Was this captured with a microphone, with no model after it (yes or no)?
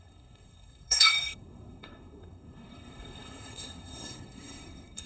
no